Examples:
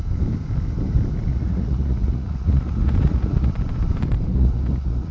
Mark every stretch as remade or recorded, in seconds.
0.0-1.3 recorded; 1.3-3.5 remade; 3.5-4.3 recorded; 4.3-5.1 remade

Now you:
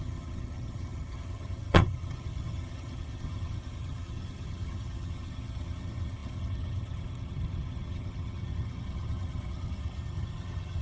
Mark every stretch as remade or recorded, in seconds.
0.0-10.8 remade

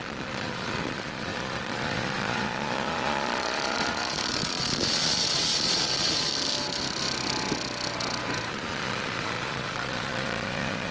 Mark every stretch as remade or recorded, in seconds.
0.0-6.3 remade; 6.3-8.5 recorded; 8.5-10.9 remade